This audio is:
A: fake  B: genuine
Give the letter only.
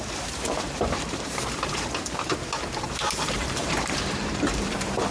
A